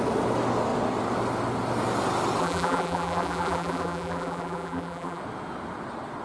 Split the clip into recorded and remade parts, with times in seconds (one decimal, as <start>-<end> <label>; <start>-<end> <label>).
0.0-2.4 recorded; 2.4-5.2 remade; 5.2-6.2 recorded